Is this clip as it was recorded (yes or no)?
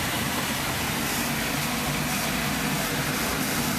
yes